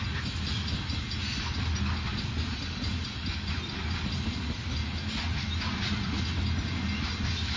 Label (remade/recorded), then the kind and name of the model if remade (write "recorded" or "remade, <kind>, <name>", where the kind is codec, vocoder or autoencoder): recorded